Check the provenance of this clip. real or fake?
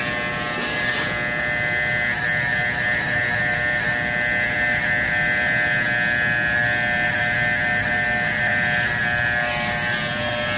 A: real